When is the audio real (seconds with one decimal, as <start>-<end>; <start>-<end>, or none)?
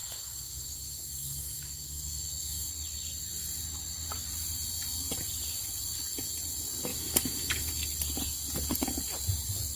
2.7-6.9; 7.7-9.8